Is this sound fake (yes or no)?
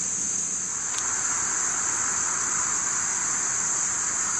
no